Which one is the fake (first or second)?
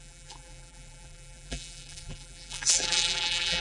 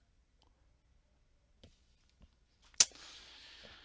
first